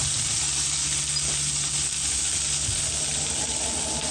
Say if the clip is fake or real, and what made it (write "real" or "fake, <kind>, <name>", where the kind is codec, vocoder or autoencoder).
real